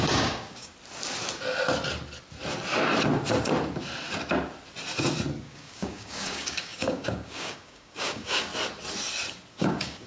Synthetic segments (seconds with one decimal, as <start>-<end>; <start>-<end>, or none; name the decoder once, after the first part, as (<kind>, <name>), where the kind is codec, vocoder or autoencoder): 0.0-0.7 (codec, DAC); 5.4-8.5; 9.5-10.1